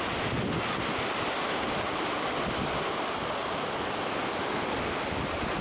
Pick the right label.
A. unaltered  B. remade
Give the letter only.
A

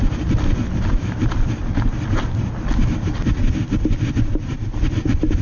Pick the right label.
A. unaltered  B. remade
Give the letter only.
A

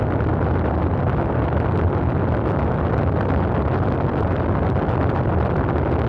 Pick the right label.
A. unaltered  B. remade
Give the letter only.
A